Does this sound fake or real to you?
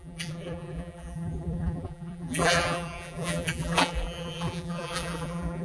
fake